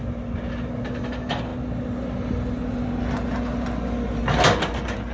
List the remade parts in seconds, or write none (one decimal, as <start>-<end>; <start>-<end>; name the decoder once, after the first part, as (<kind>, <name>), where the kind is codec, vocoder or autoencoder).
none